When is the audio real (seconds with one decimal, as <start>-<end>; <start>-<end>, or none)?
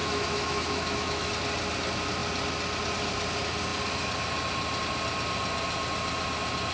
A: 1.3-6.7